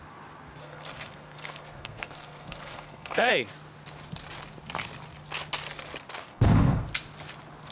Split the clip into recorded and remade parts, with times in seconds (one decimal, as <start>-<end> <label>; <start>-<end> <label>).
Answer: 0.0-0.6 recorded; 0.6-3.3 remade; 3.3-6.2 recorded; 6.2-6.8 remade; 6.8-7.7 recorded